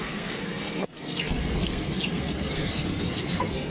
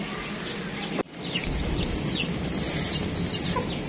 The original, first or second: second